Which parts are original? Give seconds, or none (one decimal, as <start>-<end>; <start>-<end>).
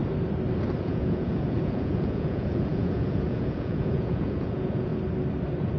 0.0-0.8; 4.9-5.8